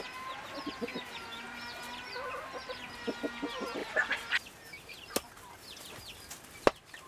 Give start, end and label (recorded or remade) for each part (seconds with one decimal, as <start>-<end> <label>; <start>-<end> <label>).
0.0-3.8 recorded; 3.8-4.3 remade; 4.3-7.1 recorded

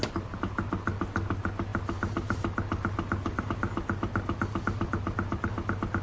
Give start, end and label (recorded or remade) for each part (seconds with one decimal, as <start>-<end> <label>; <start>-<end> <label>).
0.0-6.0 recorded

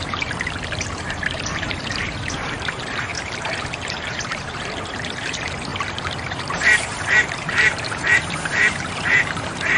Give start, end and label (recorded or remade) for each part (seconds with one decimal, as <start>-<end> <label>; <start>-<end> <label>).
0.0-5.7 remade; 5.7-6.2 recorded; 6.2-9.8 remade

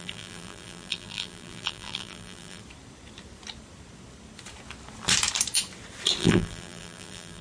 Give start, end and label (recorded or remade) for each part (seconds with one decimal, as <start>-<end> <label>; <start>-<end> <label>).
0.0-2.6 remade; 2.6-6.2 recorded; 6.2-7.4 remade

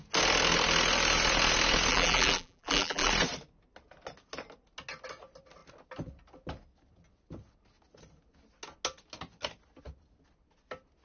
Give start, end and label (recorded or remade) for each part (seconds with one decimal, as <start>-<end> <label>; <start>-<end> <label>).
0.0-1.9 recorded; 1.9-3.1 remade; 3.1-11.0 recorded